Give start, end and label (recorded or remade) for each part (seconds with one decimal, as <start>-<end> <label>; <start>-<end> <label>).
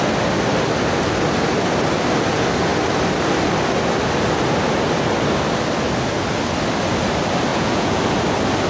0.0-7.5 recorded; 7.5-8.0 remade; 8.0-8.7 recorded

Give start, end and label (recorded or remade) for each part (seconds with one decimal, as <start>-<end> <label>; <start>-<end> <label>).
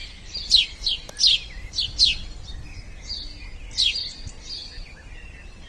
0.0-5.7 recorded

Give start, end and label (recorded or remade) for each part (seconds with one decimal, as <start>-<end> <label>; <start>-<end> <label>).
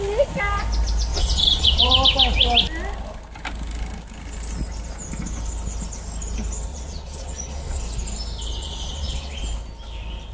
0.0-1.1 recorded; 1.1-1.9 remade; 1.9-6.7 recorded; 6.7-7.8 remade; 7.8-8.6 recorded; 8.6-9.4 remade; 9.4-10.3 recorded